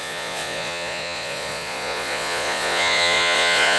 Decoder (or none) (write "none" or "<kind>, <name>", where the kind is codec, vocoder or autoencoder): vocoder, Vocos